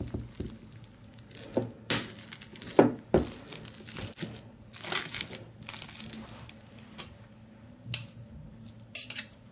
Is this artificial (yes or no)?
no